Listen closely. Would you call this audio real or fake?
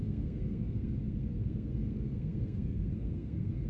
fake